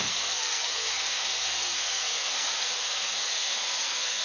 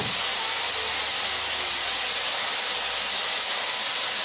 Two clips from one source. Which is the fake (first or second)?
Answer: first